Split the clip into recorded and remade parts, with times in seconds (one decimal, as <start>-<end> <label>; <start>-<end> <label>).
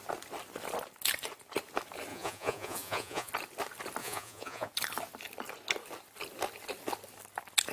0.0-2.1 recorded; 2.1-3.3 remade; 3.3-4.0 recorded; 4.0-4.7 remade; 4.7-7.7 recorded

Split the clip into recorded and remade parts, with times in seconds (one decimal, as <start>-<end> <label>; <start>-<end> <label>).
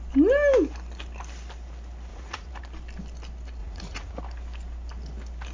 0.0-2.1 recorded; 2.1-2.6 remade; 2.6-3.6 recorded; 3.6-4.2 remade; 4.2-5.5 recorded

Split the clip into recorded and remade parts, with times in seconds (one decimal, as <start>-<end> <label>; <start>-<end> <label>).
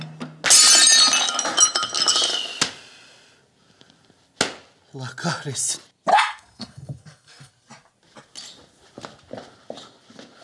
0.0-6.1 recorded; 6.1-7.5 remade; 7.5-10.4 recorded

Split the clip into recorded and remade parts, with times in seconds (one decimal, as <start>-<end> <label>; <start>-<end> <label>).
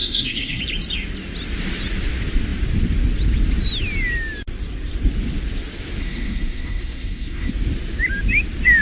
0.0-0.6 remade; 0.6-6.0 recorded; 6.0-7.5 remade; 7.5-8.8 recorded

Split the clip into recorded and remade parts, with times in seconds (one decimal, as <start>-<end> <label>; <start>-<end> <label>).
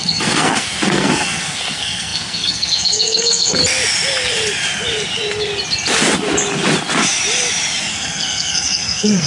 0.0-3.6 remade; 3.6-7.9 recorded; 7.9-9.3 remade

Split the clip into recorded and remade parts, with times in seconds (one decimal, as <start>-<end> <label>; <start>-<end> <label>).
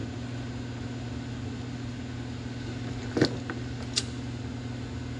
0.0-5.2 recorded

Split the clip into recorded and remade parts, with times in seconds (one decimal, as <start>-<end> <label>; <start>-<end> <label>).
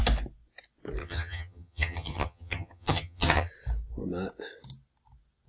0.0-1.0 recorded; 1.0-3.5 remade; 3.5-5.5 recorded